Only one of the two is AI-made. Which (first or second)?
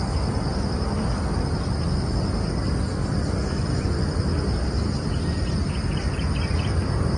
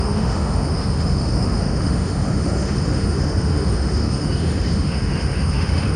second